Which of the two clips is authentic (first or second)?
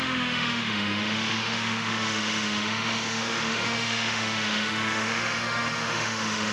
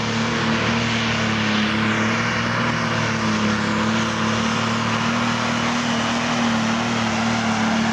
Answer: second